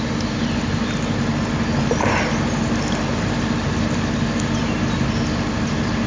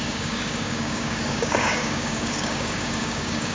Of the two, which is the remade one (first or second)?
second